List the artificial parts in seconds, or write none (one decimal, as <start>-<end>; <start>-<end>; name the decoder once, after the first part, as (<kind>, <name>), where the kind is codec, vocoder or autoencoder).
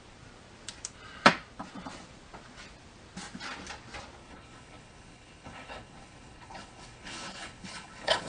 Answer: 4.2-8.3 (codec, HILCodec)